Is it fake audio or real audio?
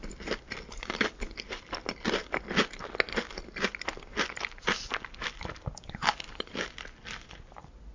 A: real